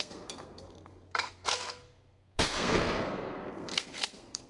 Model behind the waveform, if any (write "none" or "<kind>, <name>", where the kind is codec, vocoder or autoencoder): codec, SNAC